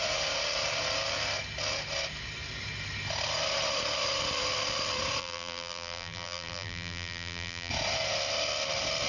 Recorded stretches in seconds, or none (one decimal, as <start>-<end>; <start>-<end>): 0.0-5.2; 7.7-9.1